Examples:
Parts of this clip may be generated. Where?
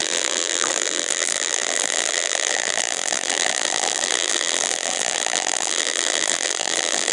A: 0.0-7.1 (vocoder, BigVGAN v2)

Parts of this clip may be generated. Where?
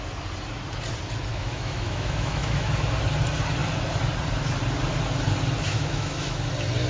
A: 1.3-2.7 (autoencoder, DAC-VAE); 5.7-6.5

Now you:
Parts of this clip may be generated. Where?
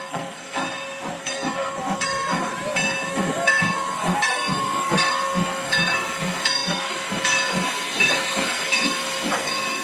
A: 0.0-0.6 (codec, SNAC); 1.2-2.5; 3.1-9.8